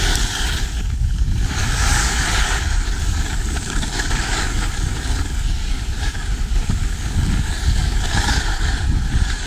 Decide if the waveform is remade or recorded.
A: remade